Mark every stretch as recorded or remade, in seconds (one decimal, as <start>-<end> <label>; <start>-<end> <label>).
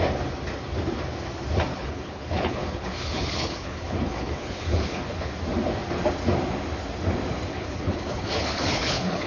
0.0-1.7 recorded; 1.7-5.3 remade; 5.3-7.5 recorded; 7.5-9.3 remade